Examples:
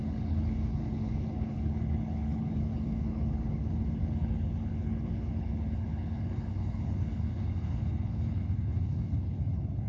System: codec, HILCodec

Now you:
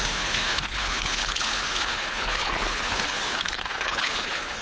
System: codec, HILCodec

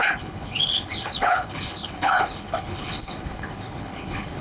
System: codec, HILCodec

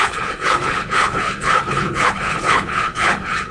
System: codec, HILCodec